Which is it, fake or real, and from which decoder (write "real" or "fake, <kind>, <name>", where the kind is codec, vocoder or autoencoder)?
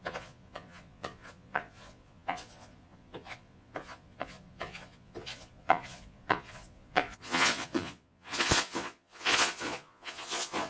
fake, vocoder, Vocos